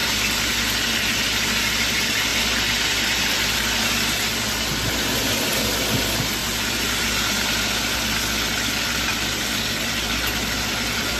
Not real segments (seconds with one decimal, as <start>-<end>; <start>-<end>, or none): none